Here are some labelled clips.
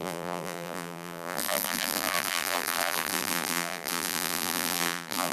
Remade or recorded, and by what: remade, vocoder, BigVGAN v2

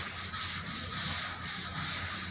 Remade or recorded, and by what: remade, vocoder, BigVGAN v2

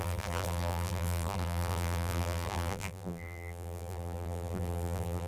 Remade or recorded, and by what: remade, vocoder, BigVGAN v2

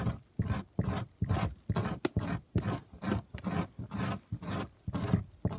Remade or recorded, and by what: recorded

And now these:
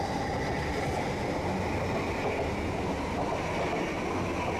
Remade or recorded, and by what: recorded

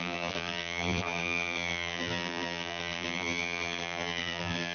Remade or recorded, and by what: remade, vocoder, BigVGAN v2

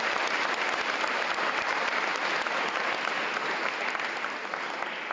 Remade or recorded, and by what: remade, vocoder, BigVGAN v2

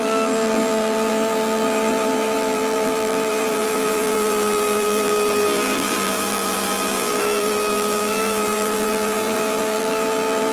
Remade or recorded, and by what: remade, vocoder, BigVGAN v2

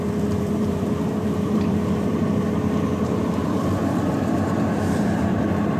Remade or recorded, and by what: remade, vocoder, BigVGAN v2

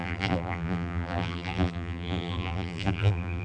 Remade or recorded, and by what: remade, vocoder, BigVGAN v2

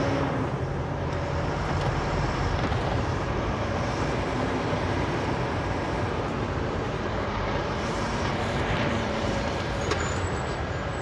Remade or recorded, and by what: remade, vocoder, BigVGAN v2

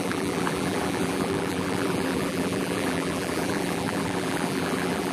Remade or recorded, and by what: remade, vocoder, BigVGAN v2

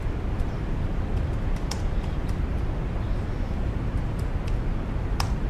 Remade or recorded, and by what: recorded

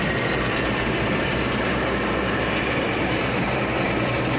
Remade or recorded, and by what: remade, vocoder, BigVGAN v2